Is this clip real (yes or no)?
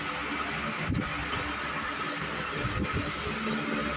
yes